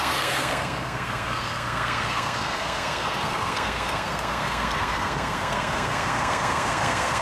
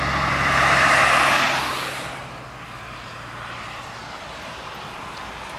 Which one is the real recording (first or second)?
second